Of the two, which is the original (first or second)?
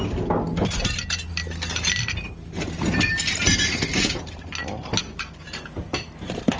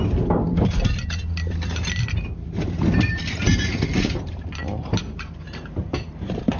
first